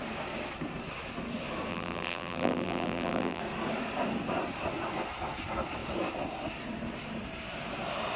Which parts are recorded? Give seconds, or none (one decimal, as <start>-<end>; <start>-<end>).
0.0-1.7; 3.4-8.2